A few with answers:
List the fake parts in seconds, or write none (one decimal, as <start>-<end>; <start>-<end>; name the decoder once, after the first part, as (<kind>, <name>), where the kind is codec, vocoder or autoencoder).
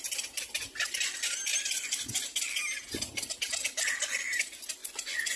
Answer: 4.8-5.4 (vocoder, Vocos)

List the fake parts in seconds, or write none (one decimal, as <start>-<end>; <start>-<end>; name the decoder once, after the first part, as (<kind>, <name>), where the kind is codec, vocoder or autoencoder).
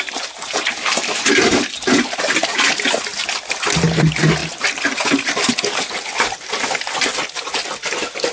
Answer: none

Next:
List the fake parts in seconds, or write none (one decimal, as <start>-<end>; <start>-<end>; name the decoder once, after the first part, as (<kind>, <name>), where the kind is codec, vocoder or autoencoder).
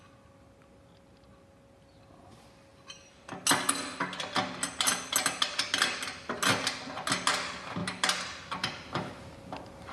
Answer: none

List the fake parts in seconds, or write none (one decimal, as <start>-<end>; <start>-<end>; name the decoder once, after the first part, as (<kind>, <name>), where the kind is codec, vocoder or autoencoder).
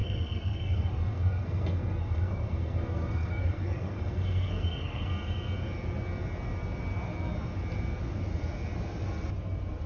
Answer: 0.0-5.1 (codec, SNAC)